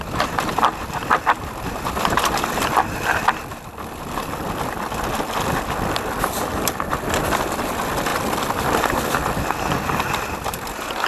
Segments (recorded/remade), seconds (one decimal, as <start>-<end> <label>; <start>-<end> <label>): 0.0-11.1 recorded